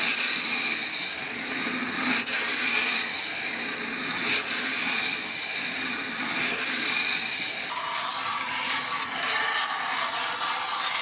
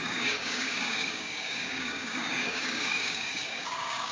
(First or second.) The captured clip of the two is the first